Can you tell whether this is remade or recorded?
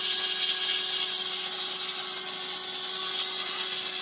recorded